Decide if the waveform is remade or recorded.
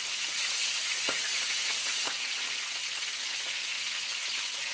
remade